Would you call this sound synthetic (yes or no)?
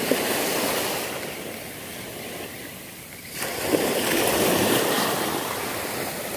no